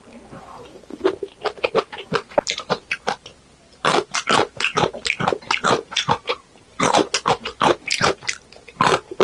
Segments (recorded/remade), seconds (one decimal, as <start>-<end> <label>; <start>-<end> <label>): 0.0-3.3 remade; 3.3-4.1 recorded; 4.1-9.2 remade